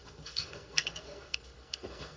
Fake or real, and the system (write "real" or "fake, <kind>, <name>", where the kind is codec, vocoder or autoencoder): fake, codec, SNAC